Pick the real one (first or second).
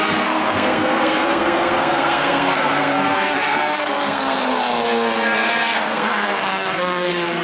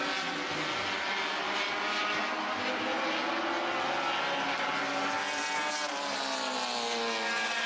second